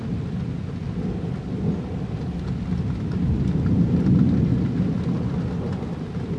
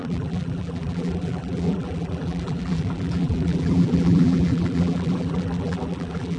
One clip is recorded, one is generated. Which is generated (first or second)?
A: second